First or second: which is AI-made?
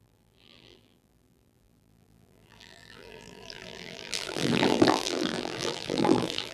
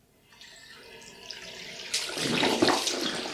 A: first